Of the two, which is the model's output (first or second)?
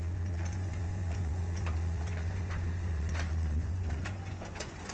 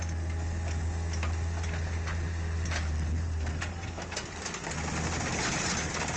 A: first